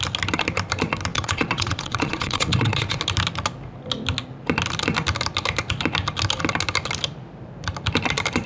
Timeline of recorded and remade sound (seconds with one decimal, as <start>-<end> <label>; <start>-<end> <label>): 0.0-1.1 recorded; 1.1-3.0 remade; 3.0-8.5 recorded